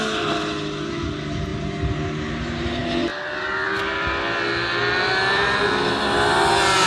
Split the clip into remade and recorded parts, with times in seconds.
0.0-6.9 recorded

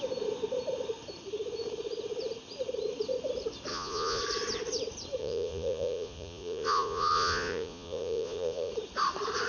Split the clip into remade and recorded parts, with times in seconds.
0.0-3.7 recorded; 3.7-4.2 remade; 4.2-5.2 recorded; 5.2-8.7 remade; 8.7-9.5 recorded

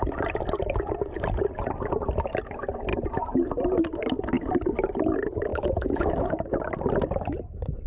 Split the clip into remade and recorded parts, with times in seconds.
0.0-5.5 recorded; 5.5-6.3 remade; 6.3-7.9 recorded

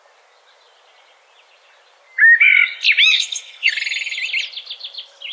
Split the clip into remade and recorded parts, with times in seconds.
0.0-3.1 recorded; 3.1-3.7 remade; 3.7-5.3 recorded

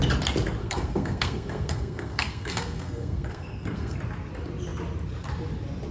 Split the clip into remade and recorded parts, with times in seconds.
0.0-0.6 recorded; 0.6-4.0 remade; 4.0-5.9 recorded